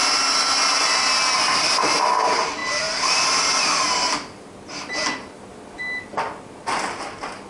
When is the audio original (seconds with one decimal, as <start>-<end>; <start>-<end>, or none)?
0.0-7.5

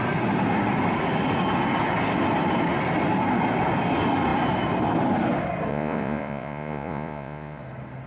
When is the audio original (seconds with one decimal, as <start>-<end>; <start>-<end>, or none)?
0.0-5.7; 7.6-8.1

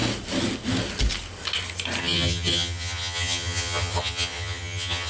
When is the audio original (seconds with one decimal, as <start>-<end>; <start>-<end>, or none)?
0.0-2.0

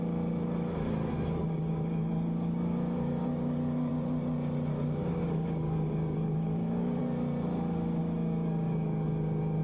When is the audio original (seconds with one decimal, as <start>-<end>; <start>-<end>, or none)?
0.0-1.4; 3.9-4.7; 7.0-8.0

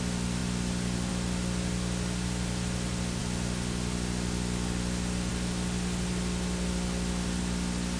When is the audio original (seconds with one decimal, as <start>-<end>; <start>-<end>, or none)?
0.0-8.0